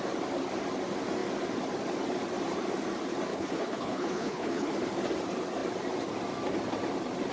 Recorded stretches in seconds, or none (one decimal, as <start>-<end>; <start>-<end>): 0.0-3.3; 4.7-7.3